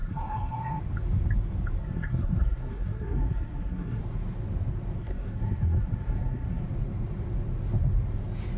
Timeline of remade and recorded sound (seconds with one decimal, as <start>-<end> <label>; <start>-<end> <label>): 0.0-0.8 remade; 0.8-1.8 recorded; 1.8-4.0 remade; 4.0-5.0 recorded; 5.0-6.6 remade; 6.6-8.6 recorded